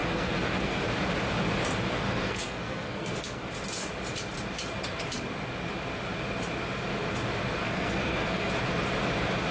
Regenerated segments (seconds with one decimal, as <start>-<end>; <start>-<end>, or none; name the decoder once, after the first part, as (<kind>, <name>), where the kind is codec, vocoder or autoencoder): 0.0-0.8 (codec, SNAC); 1.9-3.5; 7.6-8.5